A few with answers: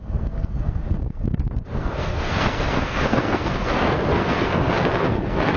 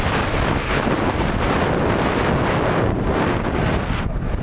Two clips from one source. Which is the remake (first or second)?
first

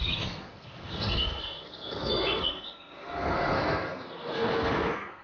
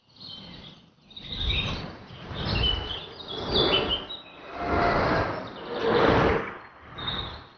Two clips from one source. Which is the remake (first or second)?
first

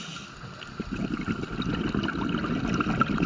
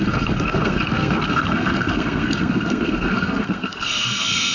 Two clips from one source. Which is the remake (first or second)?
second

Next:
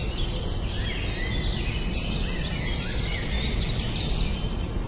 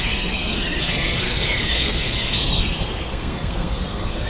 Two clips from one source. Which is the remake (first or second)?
second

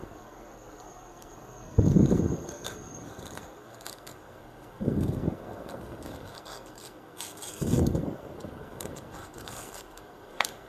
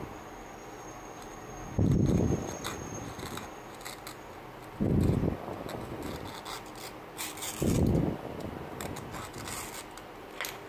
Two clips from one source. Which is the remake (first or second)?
first